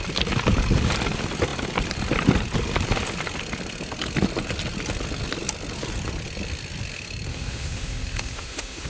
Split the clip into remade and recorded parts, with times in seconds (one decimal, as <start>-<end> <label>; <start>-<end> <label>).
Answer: 0.0-7.3 recorded; 7.3-8.9 remade